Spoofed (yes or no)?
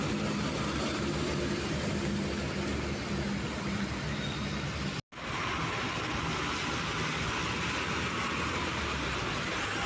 no